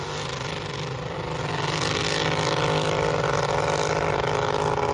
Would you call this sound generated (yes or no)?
no